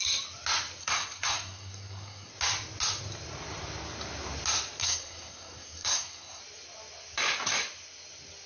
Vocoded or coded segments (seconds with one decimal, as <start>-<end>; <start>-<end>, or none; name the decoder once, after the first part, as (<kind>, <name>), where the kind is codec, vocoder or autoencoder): 0.8-2.3 (codec, SNAC); 4.8-6.4

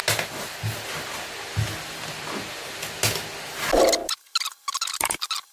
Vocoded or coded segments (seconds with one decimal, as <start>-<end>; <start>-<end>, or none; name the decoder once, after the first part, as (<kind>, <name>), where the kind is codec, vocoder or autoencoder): none

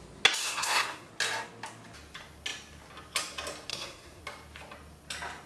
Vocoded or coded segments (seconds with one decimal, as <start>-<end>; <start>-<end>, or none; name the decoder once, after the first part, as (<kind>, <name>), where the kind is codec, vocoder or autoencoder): 0.4-1.1 (codec, SNAC); 3.7-4.2

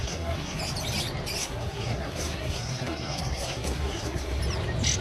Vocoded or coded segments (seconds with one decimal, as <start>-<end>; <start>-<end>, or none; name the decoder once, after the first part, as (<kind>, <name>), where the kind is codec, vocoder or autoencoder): 0.0-0.6 (codec, SNAC); 1.4-4.4

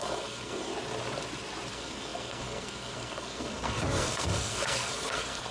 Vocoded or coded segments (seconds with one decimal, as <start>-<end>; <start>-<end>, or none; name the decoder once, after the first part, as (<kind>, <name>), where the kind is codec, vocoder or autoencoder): 0.0-0.7 (codec, SNAC); 1.7-5.5